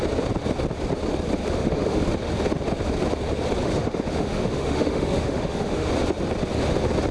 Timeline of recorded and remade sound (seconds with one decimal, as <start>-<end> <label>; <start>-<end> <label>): 0.0-1.4 recorded; 1.4-2.0 remade; 2.0-3.6 recorded; 3.6-5.9 remade; 5.9-7.1 recorded